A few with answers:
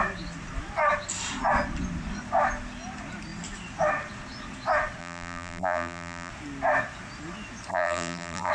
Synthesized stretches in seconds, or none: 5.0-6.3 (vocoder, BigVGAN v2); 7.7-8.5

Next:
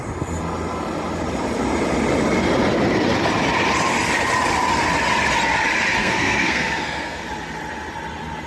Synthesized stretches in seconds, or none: 6.0-7.2 (codec, SNAC)

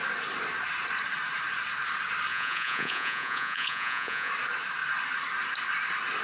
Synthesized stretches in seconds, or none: 2.3-4.3 (vocoder, Vocos)